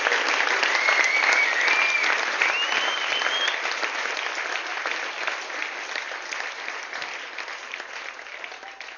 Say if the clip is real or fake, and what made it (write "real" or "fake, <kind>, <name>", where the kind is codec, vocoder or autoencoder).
real